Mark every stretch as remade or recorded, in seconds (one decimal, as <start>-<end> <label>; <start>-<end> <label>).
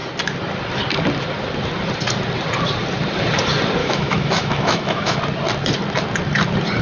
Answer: 0.0-3.8 recorded; 3.8-5.2 remade; 5.2-6.8 recorded